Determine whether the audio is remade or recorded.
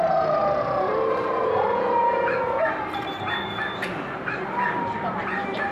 remade